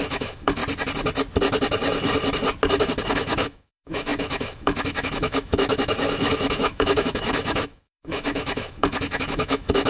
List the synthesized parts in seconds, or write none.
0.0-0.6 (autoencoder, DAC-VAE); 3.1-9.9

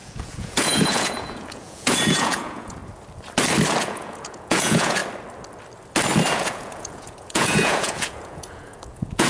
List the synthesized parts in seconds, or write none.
0.0-2.8 (vocoder, Vocos); 3.8-5.0; 6.3-9.3

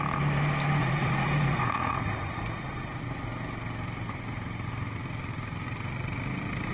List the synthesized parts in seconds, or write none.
0.8-3.0 (vocoder, Vocos)

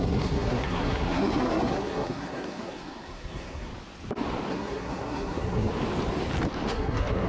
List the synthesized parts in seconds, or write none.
0.0-3.7 (codec, SNAC); 4.5-5.7; 6.7-7.3

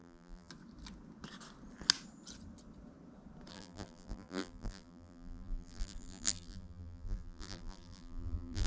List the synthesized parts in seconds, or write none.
0.0-0.5 (vocoder, BigVGAN v2); 3.5-8.7

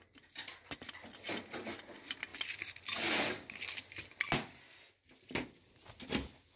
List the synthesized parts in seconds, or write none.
none